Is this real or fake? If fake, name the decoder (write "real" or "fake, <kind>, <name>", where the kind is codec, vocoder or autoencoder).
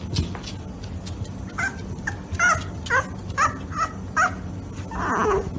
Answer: real